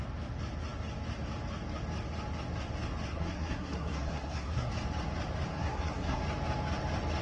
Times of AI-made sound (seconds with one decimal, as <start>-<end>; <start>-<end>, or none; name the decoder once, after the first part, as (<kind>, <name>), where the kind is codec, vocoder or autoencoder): 3.1-4.7 (codec, SNAC); 5.5-6.2